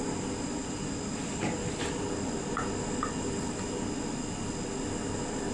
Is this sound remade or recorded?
recorded